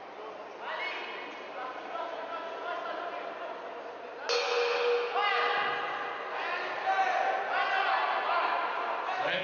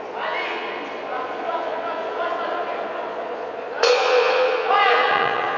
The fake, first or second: second